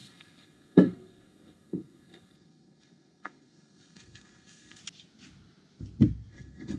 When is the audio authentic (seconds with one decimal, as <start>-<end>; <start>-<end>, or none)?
4.8-6.3